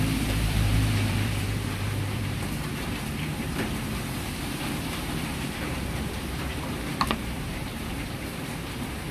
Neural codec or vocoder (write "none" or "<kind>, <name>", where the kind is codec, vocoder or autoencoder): vocoder, BigVGAN v2